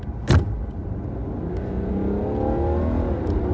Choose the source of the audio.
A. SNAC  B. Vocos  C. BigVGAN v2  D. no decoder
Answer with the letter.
D